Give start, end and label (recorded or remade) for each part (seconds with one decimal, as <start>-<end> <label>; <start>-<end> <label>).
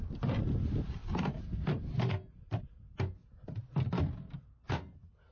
0.0-5.3 recorded